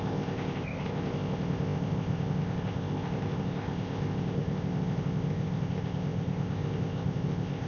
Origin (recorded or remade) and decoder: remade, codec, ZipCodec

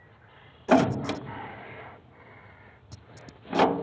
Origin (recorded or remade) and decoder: recorded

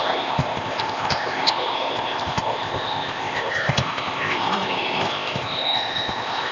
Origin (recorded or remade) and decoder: remade, codec, ZipCodec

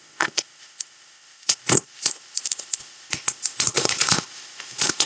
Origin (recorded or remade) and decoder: remade, codec, ZipCodec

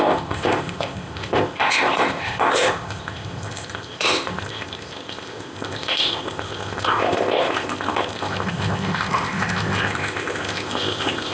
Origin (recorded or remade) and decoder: remade, codec, ZipCodec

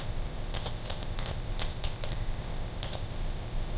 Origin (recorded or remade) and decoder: remade, codec, ZipCodec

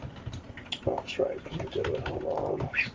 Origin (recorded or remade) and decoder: recorded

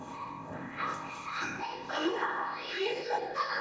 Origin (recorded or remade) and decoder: remade, codec, ZipCodec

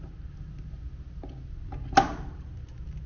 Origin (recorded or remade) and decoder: recorded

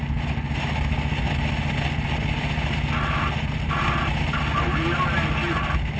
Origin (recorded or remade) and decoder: recorded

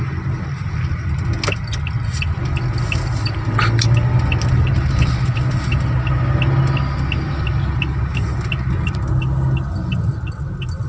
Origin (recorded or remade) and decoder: recorded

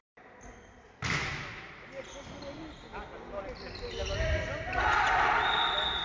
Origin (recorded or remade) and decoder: recorded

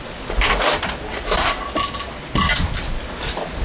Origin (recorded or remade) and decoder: recorded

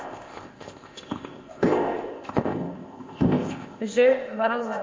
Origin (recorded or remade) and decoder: remade, codec, ZipCodec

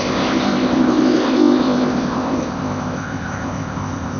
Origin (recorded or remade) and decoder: remade, codec, ZipCodec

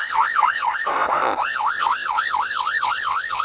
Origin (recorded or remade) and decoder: remade, codec, ZipCodec